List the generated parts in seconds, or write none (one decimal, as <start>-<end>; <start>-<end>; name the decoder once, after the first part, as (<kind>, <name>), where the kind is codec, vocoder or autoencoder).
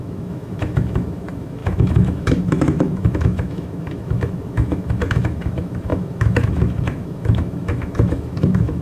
0.0-8.8 (autoencoder, DAC-VAE)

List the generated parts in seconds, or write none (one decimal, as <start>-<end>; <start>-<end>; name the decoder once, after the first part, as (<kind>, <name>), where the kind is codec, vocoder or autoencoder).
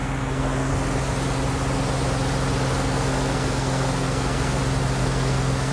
0.0-0.7 (codec, SNAC); 2.7-4.6; 5.0-5.7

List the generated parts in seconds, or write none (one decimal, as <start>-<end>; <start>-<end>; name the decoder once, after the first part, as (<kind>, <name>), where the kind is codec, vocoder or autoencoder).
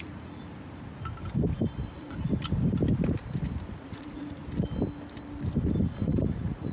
0.0-0.4 (vocoder, Vocos); 1.9-2.3; 3.8-4.4; 5.9-6.7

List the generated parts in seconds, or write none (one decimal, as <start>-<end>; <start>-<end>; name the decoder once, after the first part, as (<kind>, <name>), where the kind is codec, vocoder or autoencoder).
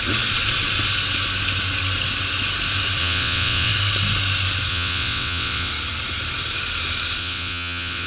3.0-3.7 (vocoder, WaveNeXt); 4.7-5.7; 7.2-8.1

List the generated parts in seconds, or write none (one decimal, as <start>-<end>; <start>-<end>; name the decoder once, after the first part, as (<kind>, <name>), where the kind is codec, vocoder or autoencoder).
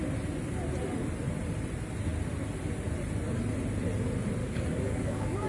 4.4-5.5 (codec, DAC)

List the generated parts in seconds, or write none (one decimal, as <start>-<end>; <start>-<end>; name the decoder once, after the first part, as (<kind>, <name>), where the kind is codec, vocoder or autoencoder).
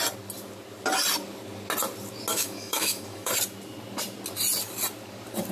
2.3-3.3 (autoencoder, DAC-VAE)